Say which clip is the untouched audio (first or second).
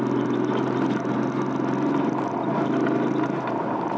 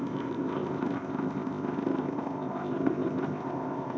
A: first